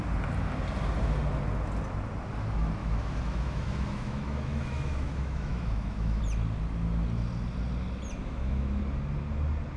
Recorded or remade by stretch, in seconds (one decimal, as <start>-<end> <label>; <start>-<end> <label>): 0.0-2.8 recorded; 2.8-6.2 remade; 6.2-8.2 recorded; 8.2-8.8 remade; 8.8-9.8 recorded